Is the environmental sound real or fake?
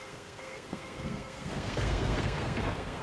fake